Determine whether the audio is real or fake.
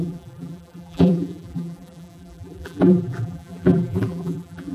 fake